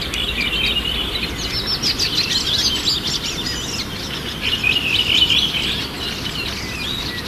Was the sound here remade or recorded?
recorded